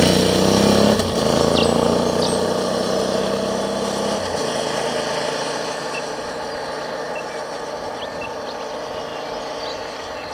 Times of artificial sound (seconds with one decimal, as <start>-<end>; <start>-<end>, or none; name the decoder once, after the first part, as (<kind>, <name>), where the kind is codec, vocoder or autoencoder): none

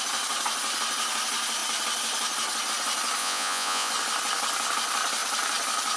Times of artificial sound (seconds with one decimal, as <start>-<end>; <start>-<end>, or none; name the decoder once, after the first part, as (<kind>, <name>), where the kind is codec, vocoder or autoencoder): 3.2-3.9 (vocoder, Vocos)

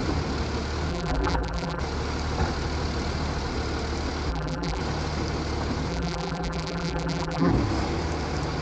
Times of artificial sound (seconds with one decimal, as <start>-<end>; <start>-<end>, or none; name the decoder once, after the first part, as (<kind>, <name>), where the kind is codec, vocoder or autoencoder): 0.9-1.8 (vocoder, BigVGAN v2); 4.3-4.8; 5.9-7.5